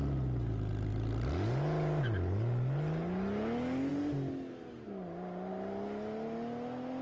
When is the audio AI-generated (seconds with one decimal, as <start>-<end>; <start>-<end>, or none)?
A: none

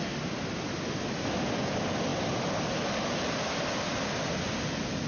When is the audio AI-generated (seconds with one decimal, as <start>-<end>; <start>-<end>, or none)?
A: none

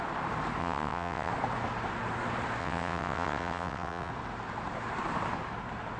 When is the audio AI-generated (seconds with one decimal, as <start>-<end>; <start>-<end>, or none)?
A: 0.6-1.3; 2.6-4.1